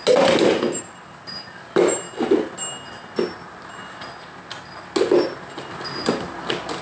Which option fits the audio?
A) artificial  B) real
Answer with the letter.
B